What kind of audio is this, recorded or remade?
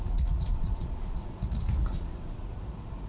remade